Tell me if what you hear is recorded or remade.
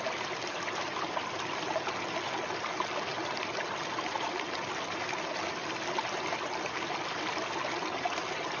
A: recorded